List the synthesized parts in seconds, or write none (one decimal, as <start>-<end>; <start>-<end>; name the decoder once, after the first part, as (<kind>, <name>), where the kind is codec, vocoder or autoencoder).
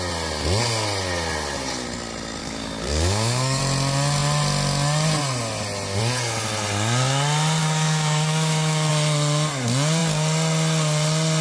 2.4-3.6 (codec, DAC); 7.6-8.9